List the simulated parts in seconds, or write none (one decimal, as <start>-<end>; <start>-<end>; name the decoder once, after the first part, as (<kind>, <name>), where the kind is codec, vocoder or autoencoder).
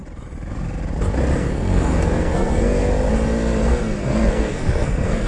1.4-2.9 (codec, SNAC); 3.6-5.3